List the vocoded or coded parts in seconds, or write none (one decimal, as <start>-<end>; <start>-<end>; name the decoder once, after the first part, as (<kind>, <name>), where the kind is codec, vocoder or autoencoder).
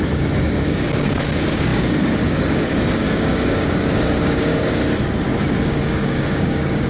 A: 0.0-4.8 (codec, DAC); 5.6-6.9